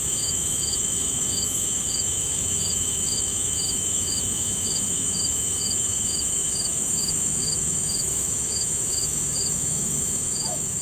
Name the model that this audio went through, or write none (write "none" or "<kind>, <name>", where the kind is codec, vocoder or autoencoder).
autoencoder, DAC-VAE